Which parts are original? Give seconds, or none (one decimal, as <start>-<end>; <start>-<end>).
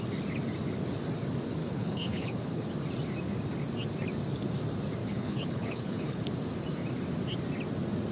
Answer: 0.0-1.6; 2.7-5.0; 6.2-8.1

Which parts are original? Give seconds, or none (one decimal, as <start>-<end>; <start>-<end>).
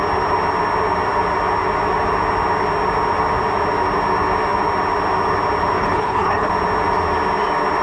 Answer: 0.0-5.8; 6.5-7.8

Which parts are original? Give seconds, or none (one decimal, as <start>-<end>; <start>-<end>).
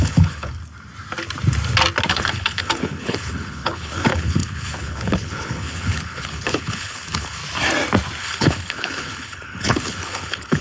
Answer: 0.6-2.1; 7.4-8.2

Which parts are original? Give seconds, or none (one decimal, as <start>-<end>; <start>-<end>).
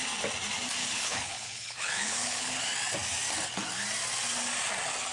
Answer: 0.0-0.8; 2.6-5.1